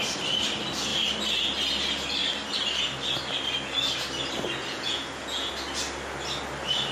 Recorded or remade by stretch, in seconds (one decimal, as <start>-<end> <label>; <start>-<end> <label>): 0.0-4.6 recorded; 4.6-5.5 remade; 5.5-6.9 recorded

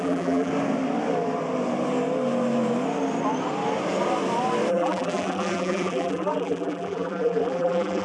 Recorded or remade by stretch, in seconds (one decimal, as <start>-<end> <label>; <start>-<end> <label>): 0.0-0.5 remade; 0.5-4.7 recorded; 4.7-8.0 remade

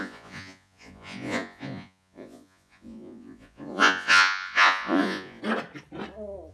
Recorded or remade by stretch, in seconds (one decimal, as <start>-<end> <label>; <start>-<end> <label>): 0.0-5.4 remade; 5.4-6.5 recorded

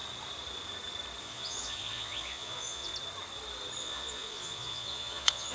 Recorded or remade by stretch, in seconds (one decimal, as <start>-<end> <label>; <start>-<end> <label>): 0.0-1.2 recorded; 1.2-2.9 remade; 2.9-3.8 recorded; 3.8-5.5 remade

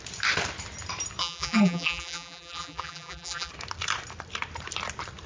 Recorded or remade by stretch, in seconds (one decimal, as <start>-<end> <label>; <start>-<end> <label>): 0.0-1.2 recorded; 1.2-3.5 remade; 3.5-5.3 recorded